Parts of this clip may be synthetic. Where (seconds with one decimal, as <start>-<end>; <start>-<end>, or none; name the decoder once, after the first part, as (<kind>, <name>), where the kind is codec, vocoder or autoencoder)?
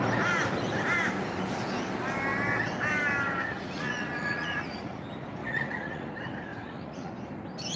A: 3.5-5.0 (vocoder, Vocos); 5.4-6.1; 6.5-7.1